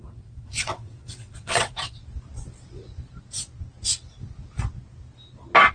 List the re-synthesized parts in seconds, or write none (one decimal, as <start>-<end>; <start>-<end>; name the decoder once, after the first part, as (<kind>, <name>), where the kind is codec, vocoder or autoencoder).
0.0-2.0 (vocoder, WaveNeXt)